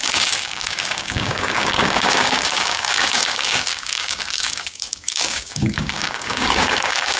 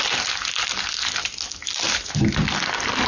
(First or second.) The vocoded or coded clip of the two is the first